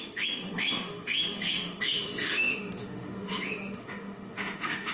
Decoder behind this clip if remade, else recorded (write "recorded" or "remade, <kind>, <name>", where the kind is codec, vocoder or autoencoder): remade, autoencoder, DAC-VAE